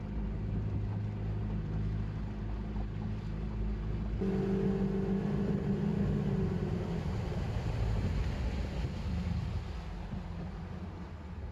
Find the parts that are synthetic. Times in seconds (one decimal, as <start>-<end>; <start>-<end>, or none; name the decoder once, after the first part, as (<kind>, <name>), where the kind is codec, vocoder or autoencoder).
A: none